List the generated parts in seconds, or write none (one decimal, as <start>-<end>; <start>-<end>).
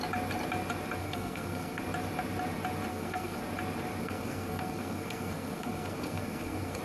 1.0-1.8; 2.9-3.4; 4.0-6.8